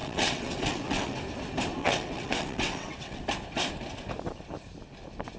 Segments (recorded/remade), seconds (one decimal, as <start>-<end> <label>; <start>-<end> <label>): 0.0-1.2 remade; 1.2-1.8 recorded; 1.8-3.2 remade; 3.2-5.4 recorded